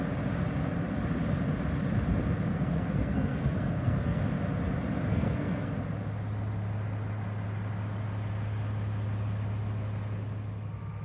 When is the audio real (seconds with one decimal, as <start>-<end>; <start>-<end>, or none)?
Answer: 0.0-2.5; 4.2-5.1; 5.7-11.0